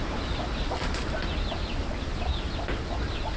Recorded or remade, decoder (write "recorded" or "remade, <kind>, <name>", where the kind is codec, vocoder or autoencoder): recorded